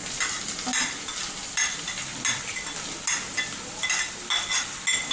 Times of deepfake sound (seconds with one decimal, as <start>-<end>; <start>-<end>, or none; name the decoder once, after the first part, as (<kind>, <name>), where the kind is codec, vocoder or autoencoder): none